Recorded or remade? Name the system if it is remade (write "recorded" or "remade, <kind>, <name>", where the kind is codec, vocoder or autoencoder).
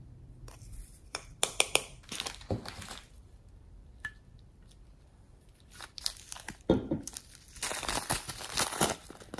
remade, vocoder, BigVGAN v2